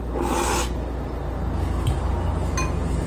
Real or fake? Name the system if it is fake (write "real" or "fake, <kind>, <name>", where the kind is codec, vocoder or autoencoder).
real